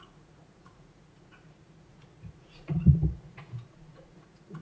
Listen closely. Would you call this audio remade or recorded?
remade